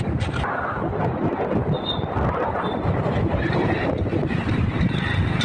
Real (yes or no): yes